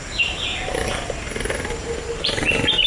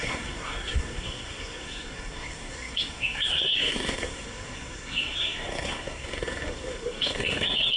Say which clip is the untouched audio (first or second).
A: first